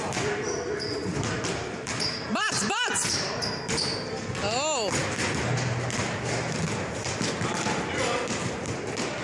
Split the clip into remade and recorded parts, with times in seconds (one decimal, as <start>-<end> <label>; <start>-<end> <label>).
0.0-1.1 recorded; 1.1-3.7 remade; 3.7-9.2 recorded